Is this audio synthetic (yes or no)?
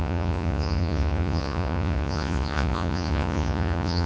yes